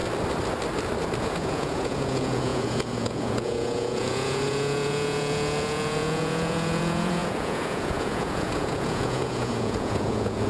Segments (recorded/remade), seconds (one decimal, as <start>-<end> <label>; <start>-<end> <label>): 0.0-1.2 recorded; 1.2-10.5 remade